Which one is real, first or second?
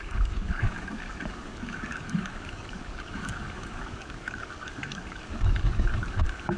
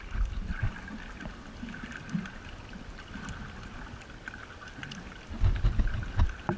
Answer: second